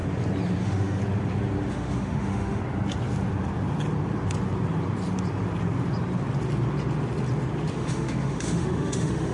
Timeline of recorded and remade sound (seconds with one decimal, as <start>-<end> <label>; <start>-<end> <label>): 0.0-0.6 recorded; 0.6-1.0 remade; 1.0-1.7 recorded; 1.7-2.6 remade; 2.6-7.7 recorded; 7.7-9.3 remade